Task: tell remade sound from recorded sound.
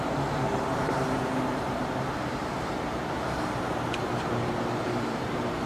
remade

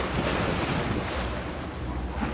recorded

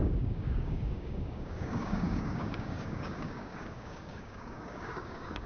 remade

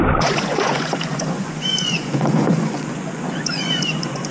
remade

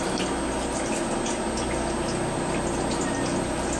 recorded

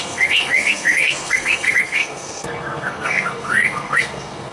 remade